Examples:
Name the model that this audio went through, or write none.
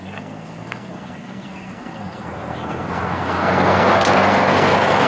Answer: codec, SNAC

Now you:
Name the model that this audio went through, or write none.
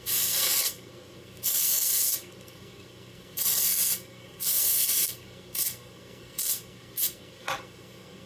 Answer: codec, SNAC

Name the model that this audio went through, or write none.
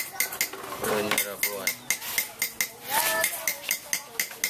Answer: none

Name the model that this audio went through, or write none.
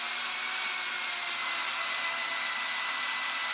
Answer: none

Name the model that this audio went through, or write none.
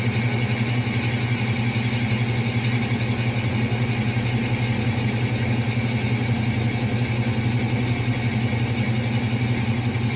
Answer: none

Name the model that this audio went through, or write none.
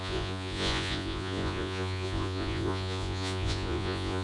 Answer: vocoder, Vocos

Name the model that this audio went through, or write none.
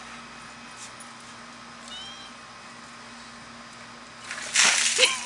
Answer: none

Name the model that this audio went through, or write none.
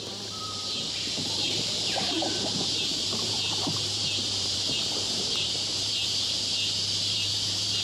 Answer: vocoder, BigVGAN v2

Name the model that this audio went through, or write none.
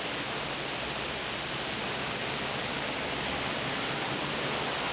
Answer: none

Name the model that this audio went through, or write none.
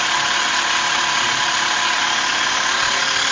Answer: none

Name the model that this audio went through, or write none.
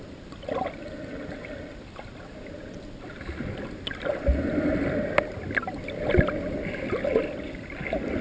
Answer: none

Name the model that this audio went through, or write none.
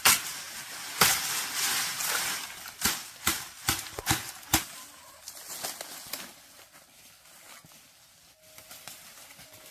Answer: none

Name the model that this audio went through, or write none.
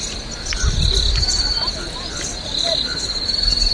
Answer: none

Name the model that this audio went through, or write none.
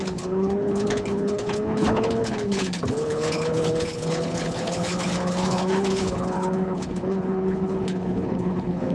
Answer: codec, HILCodec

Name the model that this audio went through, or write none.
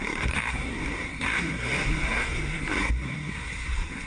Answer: codec, SNAC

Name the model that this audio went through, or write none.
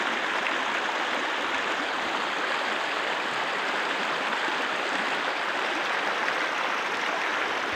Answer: none